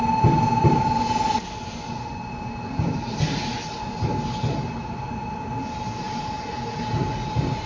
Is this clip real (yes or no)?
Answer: yes